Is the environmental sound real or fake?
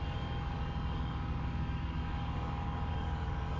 fake